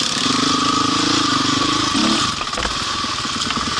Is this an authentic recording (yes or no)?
yes